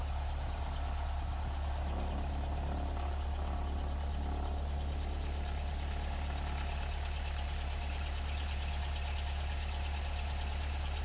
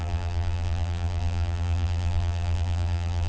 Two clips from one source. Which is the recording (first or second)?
first